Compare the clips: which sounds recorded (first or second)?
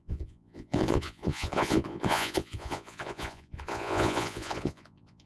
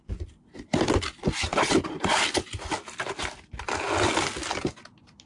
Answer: second